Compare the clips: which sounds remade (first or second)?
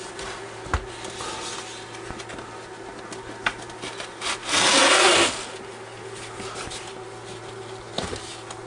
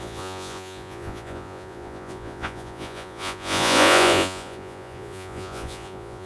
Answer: second